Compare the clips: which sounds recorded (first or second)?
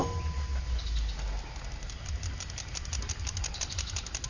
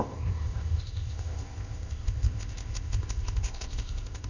first